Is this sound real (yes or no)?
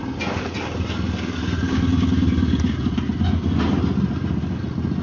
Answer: yes